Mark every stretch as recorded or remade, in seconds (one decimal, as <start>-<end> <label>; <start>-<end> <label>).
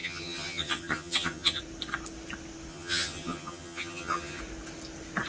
0.0-1.6 remade; 1.6-2.7 recorded; 2.7-4.4 remade; 4.4-5.3 recorded